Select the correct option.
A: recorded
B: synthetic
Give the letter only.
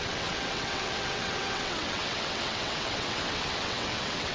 B